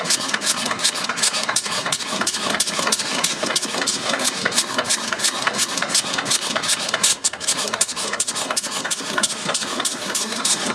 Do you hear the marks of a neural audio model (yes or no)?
yes